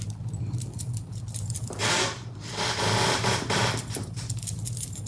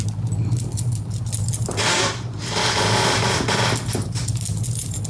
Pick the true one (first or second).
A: second